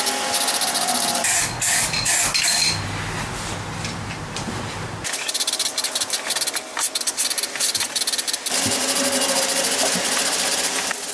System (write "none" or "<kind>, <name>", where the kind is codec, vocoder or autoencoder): none